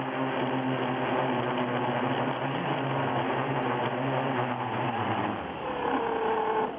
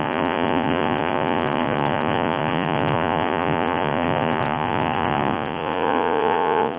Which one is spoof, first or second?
second